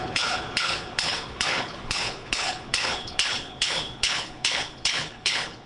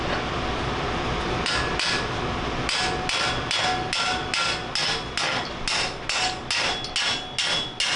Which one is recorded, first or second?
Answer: second